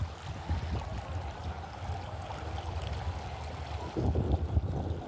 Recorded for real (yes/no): yes